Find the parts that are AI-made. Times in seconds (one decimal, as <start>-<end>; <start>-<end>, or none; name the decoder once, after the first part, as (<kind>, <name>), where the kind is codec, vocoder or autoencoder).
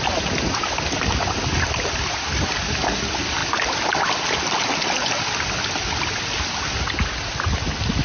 none